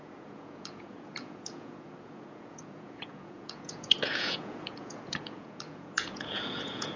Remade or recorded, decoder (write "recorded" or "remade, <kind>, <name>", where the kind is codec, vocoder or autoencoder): remade, vocoder, Vocos